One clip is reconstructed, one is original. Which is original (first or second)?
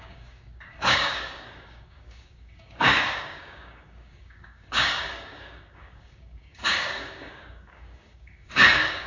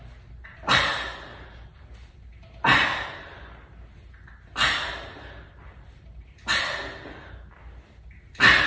second